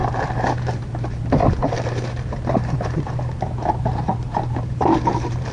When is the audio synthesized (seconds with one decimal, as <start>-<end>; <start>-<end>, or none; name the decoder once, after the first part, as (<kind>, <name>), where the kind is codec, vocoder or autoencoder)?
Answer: 0.5-5.5 (vocoder, BigVGAN v2)